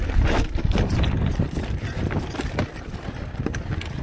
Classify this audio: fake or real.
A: fake